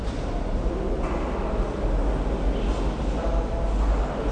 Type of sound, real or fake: real